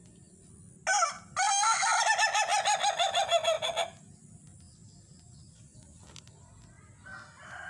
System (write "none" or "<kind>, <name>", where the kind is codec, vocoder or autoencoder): none